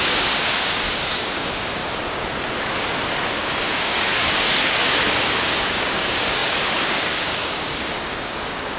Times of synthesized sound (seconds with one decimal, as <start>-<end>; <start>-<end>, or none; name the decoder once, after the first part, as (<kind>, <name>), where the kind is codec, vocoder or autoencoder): 0.0-1.8 (codec, DAC); 3.2-8.8